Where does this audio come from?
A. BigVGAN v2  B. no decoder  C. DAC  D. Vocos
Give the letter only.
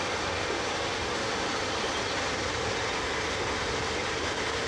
B